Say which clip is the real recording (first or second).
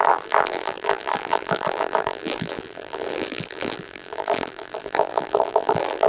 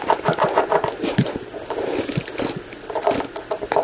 second